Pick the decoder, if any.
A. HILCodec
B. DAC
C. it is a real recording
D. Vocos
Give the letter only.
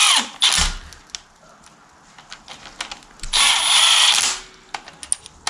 C